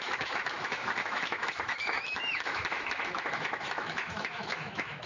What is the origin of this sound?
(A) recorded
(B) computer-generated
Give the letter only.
B